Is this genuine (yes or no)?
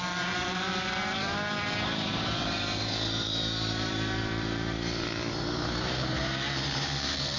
no